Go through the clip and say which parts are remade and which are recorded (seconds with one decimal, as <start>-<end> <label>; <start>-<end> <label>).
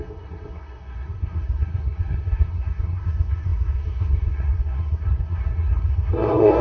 0.0-6.6 remade